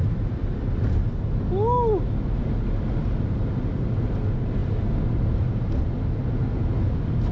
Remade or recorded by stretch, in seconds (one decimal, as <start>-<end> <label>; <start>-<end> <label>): 0.0-7.3 recorded